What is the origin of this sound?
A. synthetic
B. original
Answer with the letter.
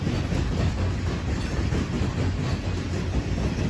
B